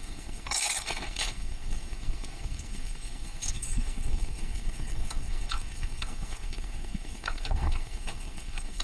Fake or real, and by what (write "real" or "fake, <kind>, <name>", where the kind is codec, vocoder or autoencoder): fake, codec, SNAC